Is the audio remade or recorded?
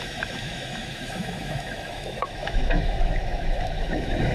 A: remade